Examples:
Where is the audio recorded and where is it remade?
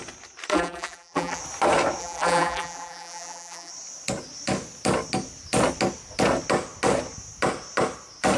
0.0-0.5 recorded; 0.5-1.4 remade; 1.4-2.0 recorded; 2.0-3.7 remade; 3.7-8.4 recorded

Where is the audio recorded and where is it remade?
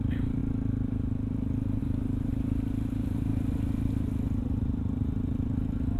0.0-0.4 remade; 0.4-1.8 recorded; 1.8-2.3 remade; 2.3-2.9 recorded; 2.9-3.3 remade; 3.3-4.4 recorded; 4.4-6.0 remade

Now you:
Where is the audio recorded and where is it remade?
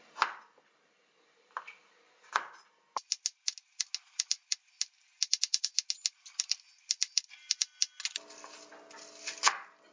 0.0-9.9 recorded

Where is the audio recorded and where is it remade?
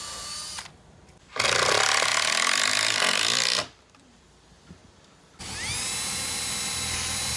0.0-4.8 remade; 4.8-6.1 recorded; 6.1-7.4 remade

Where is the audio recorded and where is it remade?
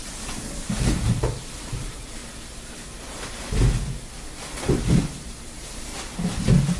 0.0-2.2 remade; 2.2-5.5 recorded; 5.5-5.9 remade; 5.9-6.8 recorded